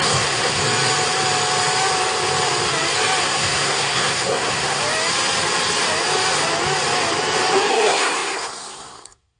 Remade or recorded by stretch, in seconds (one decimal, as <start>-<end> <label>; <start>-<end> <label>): 0.0-0.6 remade; 0.6-3.2 recorded; 3.2-4.8 remade; 4.8-7.7 recorded; 7.7-9.4 remade